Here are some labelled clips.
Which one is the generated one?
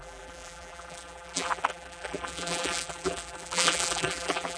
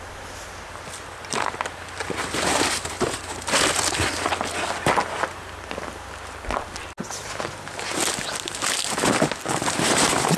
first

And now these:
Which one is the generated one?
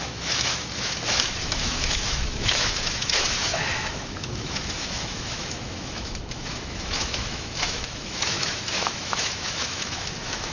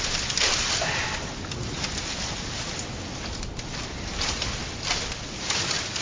first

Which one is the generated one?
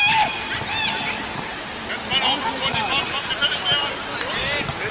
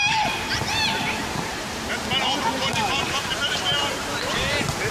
second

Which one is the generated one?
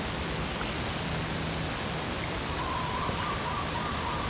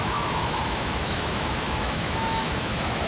second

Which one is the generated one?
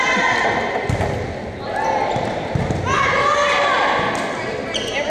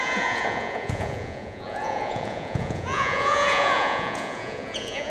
second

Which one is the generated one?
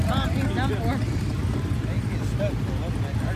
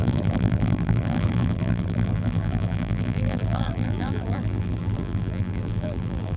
second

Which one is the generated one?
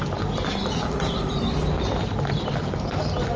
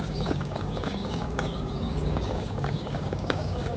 second